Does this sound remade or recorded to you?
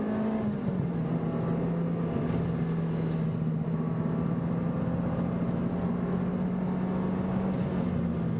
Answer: recorded